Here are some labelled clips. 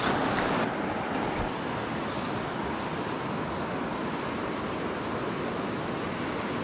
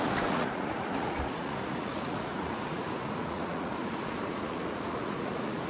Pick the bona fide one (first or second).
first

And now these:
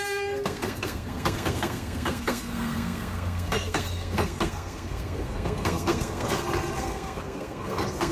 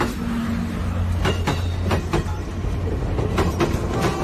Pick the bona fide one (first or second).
second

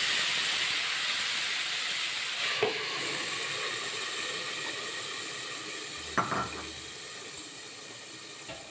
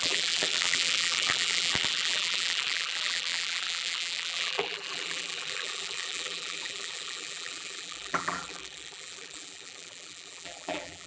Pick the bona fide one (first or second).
first